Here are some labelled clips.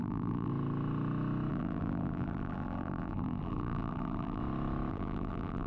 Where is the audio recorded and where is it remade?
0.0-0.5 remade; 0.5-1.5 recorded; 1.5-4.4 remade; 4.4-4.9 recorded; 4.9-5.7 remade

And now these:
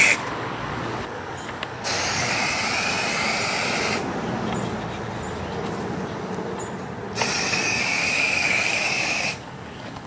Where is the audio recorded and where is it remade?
0.0-2.4 remade; 2.4-7.4 recorded; 7.4-10.1 remade

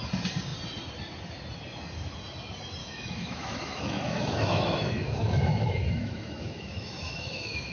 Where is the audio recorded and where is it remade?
0.0-2.8 recorded; 2.8-7.7 remade

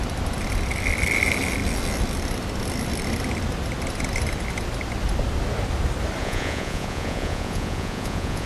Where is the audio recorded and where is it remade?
0.0-6.2 recorded; 6.2-8.5 remade